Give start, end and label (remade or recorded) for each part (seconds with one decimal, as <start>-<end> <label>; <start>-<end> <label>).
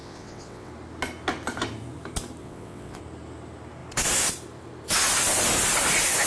0.0-0.7 remade; 0.7-2.4 recorded; 2.4-3.0 remade; 3.0-6.3 recorded